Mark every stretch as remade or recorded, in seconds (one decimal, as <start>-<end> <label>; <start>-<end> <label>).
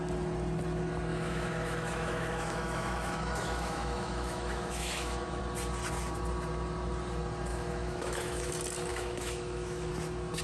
0.0-1.1 recorded; 1.1-5.4 remade; 5.4-7.5 recorded; 7.5-8.5 remade; 8.5-8.9 recorded; 8.9-9.9 remade; 9.9-10.4 recorded